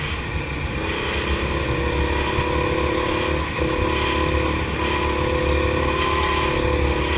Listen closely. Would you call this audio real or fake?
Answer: real